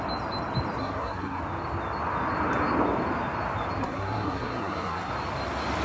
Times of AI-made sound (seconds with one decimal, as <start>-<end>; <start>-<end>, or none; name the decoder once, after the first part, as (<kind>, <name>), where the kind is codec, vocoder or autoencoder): 0.8-1.4 (codec, SNAC); 3.8-5.1